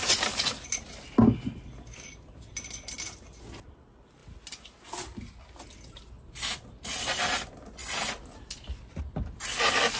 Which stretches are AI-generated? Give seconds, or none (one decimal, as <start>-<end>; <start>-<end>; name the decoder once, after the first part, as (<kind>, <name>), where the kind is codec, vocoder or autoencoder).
none